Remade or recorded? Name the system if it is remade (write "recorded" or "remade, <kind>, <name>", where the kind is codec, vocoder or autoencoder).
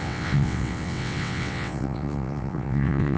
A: remade, vocoder, WaveNeXt